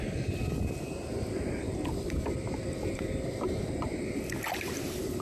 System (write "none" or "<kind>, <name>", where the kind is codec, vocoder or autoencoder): none